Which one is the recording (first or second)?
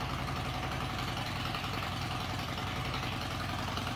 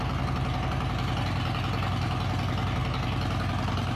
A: second